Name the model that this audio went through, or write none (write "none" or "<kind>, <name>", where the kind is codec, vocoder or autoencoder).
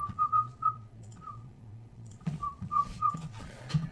vocoder, Vocos